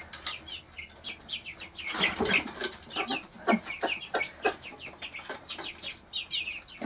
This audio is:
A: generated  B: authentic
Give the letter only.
B